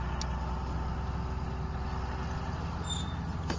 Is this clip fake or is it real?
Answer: real